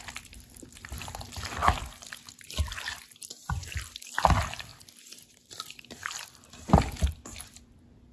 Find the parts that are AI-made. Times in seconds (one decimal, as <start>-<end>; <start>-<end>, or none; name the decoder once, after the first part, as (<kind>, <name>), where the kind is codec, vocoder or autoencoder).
4.7-5.8 (vocoder, BigVGAN v2)